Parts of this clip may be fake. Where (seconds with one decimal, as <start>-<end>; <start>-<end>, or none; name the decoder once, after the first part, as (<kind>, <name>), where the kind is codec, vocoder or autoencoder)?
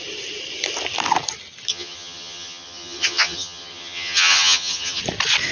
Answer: 1.7-5.0 (vocoder, HiFi-GAN)